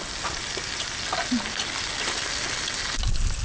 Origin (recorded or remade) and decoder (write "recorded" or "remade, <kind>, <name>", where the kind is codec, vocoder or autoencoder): recorded